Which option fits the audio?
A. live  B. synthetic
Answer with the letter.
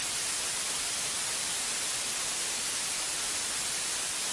B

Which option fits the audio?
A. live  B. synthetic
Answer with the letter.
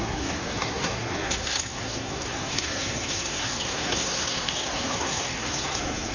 B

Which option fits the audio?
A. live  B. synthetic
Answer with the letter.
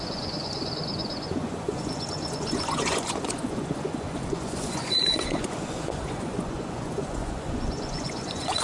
B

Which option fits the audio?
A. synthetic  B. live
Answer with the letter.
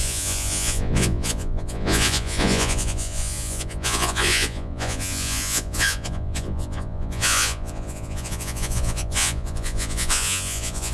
A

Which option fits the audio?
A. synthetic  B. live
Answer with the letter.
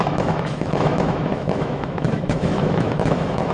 A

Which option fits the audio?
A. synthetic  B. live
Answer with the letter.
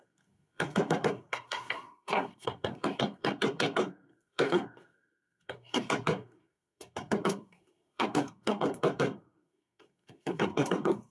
A